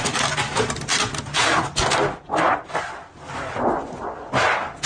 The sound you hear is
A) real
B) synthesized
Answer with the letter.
A